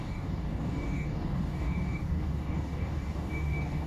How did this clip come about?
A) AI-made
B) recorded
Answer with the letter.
A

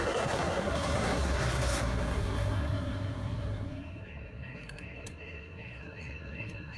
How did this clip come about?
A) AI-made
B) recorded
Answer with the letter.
A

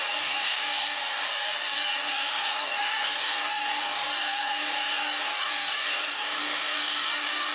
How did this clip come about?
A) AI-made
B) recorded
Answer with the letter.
A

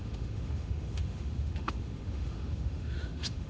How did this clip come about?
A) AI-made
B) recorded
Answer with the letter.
A